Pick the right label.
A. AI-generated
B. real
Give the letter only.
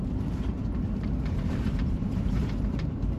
A